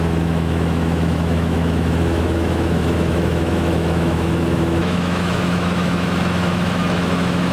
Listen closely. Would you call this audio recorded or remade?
remade